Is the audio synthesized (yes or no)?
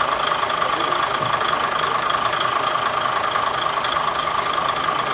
no